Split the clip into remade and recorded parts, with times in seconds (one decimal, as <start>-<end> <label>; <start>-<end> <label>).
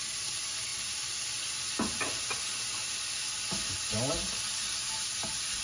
0.0-5.6 recorded